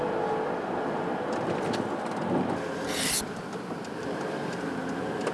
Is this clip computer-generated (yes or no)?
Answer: no